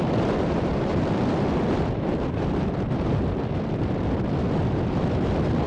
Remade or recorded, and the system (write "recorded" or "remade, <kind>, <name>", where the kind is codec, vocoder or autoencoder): remade, vocoder, BigVGAN v2